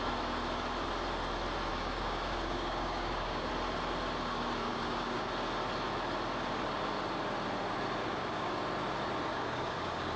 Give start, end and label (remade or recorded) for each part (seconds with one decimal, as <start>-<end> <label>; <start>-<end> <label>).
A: 0.0-1.7 recorded; 1.7-3.5 remade; 3.5-4.6 recorded; 4.6-5.3 remade; 5.3-8.0 recorded; 8.0-8.6 remade; 8.6-9.3 recorded; 9.3-10.2 remade